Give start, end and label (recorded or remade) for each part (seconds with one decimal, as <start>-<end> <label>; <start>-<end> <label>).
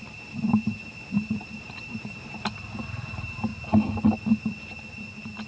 0.0-3.5 remade; 3.5-5.5 recorded